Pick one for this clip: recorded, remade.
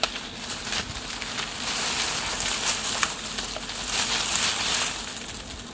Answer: recorded